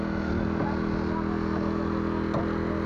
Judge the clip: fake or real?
real